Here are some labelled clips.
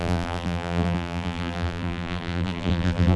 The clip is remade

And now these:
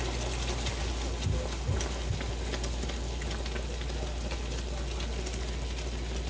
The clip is recorded